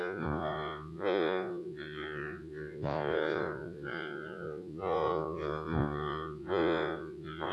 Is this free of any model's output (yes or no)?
no